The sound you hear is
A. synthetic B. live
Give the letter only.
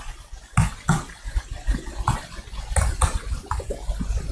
B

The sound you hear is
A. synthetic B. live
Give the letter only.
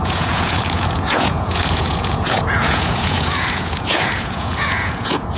A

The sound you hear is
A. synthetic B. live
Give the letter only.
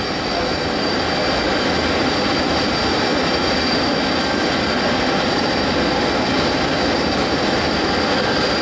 B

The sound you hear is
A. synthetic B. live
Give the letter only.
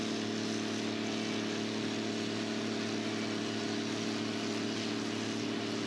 B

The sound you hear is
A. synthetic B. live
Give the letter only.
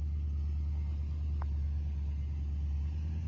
B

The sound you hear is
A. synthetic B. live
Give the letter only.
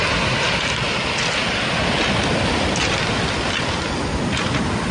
B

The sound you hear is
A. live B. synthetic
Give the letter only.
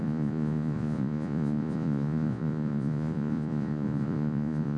B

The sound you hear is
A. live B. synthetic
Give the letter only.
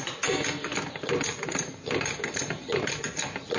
A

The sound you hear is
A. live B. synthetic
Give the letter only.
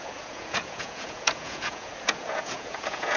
B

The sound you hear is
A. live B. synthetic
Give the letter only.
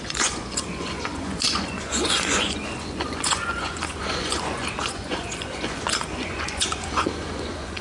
B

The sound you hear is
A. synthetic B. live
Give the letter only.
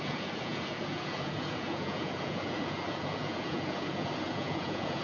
A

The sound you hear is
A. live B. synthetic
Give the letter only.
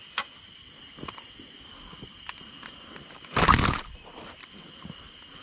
A